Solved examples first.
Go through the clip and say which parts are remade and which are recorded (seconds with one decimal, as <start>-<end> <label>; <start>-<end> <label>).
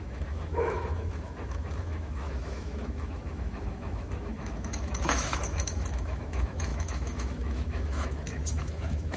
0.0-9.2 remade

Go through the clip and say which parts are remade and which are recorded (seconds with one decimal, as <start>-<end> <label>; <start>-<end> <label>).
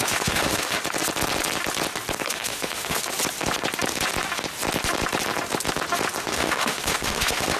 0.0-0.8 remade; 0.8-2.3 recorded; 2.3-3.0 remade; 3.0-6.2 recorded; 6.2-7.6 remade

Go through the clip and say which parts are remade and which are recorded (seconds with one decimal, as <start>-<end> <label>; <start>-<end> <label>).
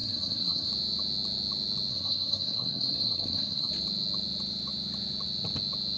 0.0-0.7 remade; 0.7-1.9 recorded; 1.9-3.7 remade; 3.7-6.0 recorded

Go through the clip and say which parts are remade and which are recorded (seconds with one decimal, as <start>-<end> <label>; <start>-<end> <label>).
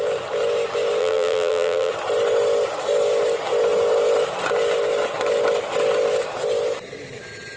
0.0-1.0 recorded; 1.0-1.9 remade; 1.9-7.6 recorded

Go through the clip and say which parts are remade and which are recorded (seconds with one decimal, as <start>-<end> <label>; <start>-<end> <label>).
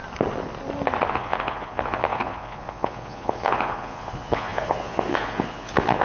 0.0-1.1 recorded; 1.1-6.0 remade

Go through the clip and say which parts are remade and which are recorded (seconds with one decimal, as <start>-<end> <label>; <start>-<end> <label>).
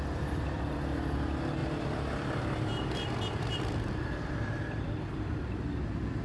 0.0-1.6 recorded; 1.6-5.3 remade; 5.3-6.2 recorded